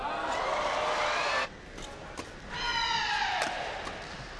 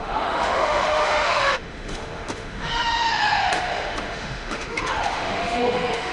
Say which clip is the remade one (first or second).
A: second